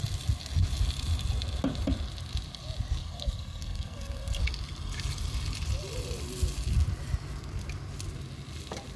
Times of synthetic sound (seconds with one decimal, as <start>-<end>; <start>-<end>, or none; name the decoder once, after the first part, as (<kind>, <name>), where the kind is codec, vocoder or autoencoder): 3.0-4.4 (codec, SNAC)